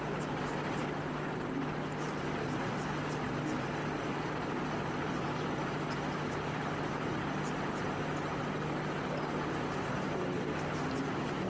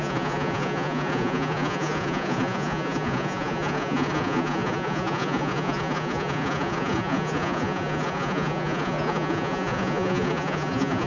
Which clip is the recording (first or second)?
first